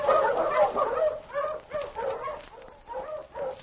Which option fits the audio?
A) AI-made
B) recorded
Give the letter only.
B